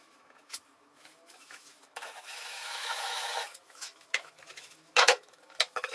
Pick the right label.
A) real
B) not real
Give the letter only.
B